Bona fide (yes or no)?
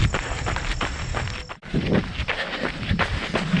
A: yes